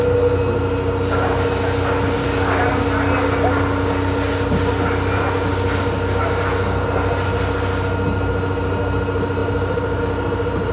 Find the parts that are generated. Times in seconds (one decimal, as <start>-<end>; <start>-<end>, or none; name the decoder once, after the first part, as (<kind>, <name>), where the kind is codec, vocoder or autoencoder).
none

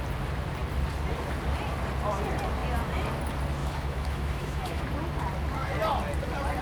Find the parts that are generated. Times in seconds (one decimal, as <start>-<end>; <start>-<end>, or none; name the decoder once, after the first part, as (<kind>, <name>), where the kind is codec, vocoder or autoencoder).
3.6-4.8 (autoencoder, DAC-VAE)

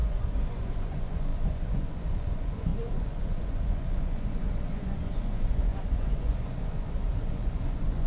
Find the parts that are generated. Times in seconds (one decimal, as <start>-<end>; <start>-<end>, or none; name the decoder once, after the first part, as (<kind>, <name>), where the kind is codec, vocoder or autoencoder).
0.0-8.1 (vocoder, Vocos)

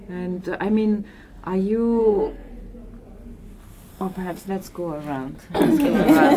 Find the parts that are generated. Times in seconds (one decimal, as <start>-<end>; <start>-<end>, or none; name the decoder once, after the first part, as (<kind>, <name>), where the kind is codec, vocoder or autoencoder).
2.0-2.5 (codec, SNAC); 3.9-4.5